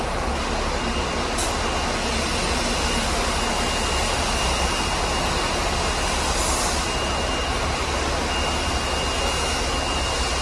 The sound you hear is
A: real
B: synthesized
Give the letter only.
A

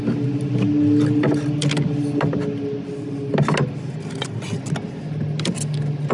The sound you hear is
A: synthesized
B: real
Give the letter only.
B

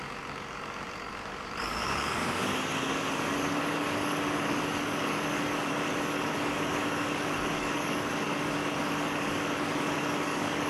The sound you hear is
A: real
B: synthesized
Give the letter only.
B